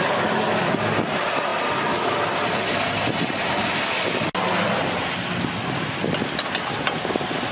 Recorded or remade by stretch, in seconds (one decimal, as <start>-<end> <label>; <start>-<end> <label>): 0.0-7.5 recorded